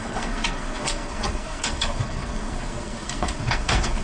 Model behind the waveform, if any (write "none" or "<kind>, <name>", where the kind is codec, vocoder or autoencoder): codec, SNAC